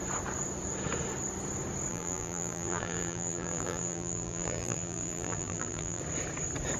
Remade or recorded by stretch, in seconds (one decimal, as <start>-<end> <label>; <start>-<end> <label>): 0.0-1.9 recorded; 1.9-6.0 remade; 6.0-6.8 recorded

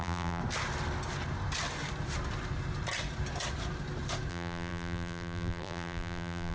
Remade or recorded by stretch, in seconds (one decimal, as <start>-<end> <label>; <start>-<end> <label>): 0.0-0.4 remade; 0.4-4.3 recorded; 4.3-6.5 remade

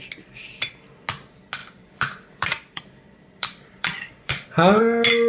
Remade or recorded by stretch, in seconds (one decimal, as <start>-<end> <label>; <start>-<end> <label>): 0.0-1.6 recorded; 1.6-4.8 remade; 4.8-5.3 recorded

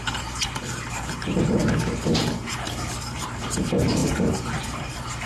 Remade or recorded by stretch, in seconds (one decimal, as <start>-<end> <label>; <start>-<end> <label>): 0.0-1.6 remade; 1.6-2.2 recorded; 2.2-5.3 remade

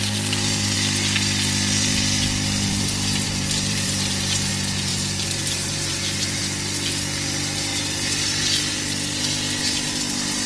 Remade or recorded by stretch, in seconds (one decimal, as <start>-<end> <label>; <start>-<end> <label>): 0.0-2.7 recorded; 2.7-4.5 remade; 4.5-4.9 recorded; 4.9-6.4 remade; 6.4-7.7 recorded; 7.7-8.4 remade; 8.4-10.5 recorded